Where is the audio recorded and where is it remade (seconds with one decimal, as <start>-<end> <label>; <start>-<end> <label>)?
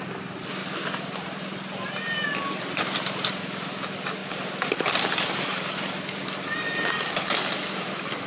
0.0-8.3 recorded